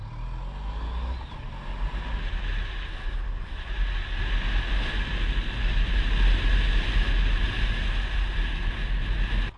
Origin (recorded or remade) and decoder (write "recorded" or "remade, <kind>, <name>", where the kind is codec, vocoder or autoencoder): recorded